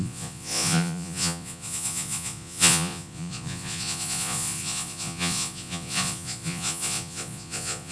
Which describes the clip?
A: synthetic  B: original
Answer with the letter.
A